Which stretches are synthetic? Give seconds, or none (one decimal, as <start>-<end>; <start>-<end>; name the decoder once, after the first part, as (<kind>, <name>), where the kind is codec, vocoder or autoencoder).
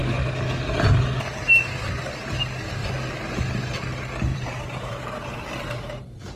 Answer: 2.8-3.4 (vocoder, BigVGAN v2); 4.3-6.4